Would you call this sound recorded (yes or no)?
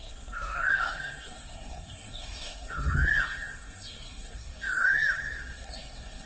no